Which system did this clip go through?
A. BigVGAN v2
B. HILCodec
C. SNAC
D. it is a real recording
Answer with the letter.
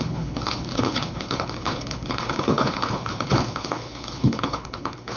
B